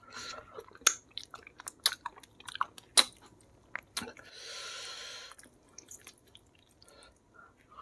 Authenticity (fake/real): real